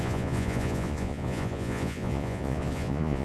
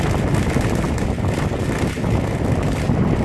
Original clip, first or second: second